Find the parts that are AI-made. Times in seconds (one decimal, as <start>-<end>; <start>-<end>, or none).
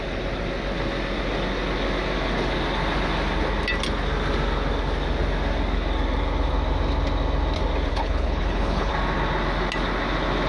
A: 7.9-8.9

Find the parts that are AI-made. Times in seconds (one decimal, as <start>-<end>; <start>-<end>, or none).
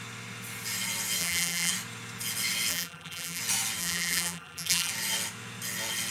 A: 1.2-1.7; 2.7-3.4; 3.8-4.9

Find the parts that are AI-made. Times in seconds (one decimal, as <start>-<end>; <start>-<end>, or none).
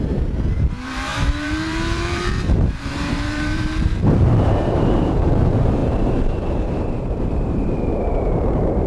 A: 0.0-8.9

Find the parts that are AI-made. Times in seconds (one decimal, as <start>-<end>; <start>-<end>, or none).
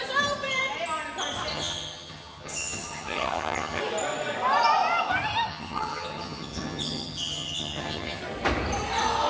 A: 1.5-3.8; 5.5-8.2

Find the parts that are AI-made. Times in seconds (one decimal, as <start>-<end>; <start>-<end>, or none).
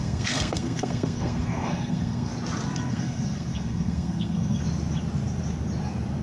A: 0.0-2.3; 2.9-4.6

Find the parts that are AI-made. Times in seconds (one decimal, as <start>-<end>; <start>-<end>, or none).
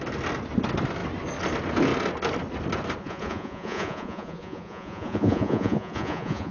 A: 3.0-6.5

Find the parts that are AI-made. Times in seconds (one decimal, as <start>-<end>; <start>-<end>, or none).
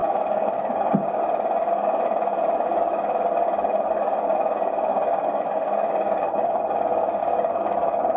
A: 0.0-1.2; 4.9-6.6; 7.2-8.2